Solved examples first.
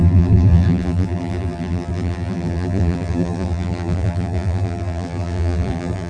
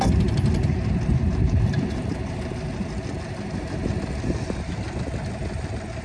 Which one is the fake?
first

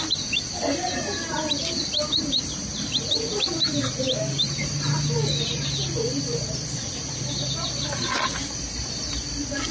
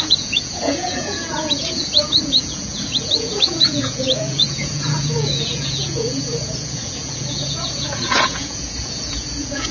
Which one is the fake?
second